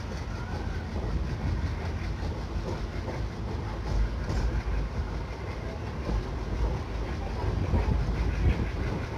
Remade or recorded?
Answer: recorded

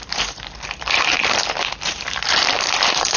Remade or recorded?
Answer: remade